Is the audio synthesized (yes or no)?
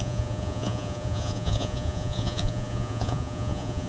yes